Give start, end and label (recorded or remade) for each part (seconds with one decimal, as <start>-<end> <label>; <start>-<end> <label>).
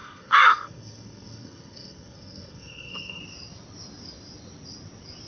0.0-3.2 remade; 3.2-5.3 recorded